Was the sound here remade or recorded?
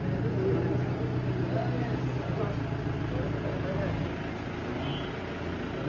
recorded